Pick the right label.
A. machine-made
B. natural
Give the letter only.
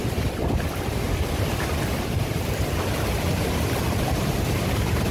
A